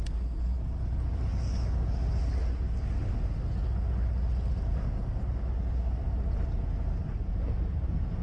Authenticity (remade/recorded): recorded